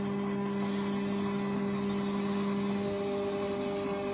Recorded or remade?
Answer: recorded